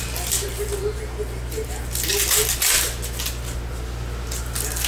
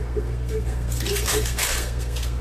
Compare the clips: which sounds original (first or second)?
first